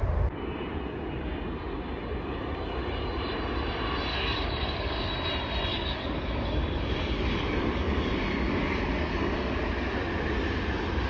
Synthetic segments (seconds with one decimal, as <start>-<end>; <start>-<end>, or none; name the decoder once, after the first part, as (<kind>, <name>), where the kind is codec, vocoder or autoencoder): 4.1-5.1 (codec, DAC); 5.7-9.6